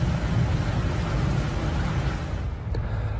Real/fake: real